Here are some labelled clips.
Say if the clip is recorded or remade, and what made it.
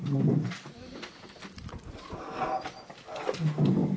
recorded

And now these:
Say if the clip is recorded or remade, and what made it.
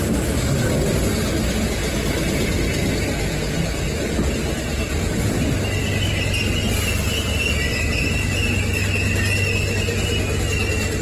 recorded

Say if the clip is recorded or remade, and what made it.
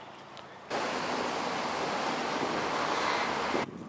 recorded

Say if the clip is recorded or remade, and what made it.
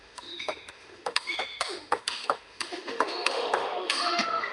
remade, autoencoder, DAC-VAE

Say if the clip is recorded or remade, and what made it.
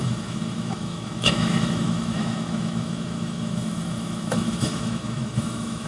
remade, autoencoder, DAC-VAE